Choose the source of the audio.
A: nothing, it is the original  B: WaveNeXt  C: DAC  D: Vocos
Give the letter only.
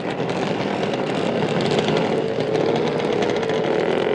A